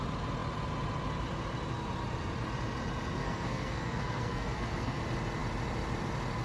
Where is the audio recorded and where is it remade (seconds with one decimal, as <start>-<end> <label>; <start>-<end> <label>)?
0.0-3.2 recorded; 3.2-5.0 remade; 5.0-6.4 recorded